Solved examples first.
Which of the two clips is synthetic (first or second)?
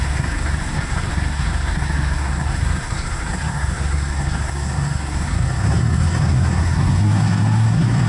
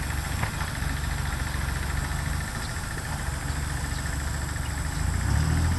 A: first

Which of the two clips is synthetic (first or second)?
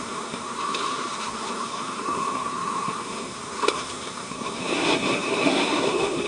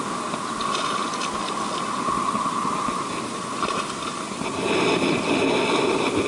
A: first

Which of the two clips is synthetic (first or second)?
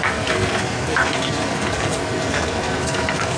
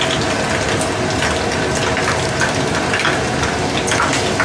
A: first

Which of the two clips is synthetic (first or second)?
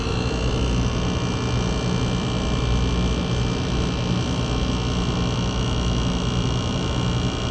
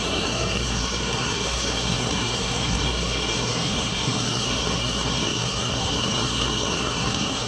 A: second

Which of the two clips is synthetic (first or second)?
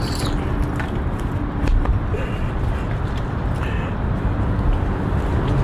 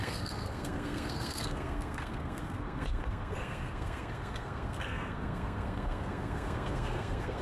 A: second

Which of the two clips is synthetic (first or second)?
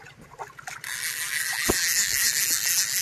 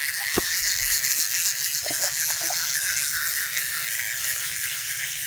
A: second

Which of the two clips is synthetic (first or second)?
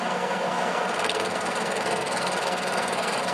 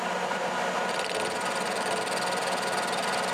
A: first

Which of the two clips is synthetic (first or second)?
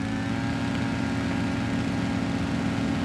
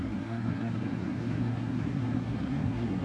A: second